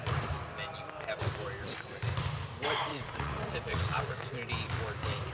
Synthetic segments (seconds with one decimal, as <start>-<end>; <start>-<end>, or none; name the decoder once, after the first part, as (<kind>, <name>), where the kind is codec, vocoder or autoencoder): 2.9-4.4 (vocoder, Vocos)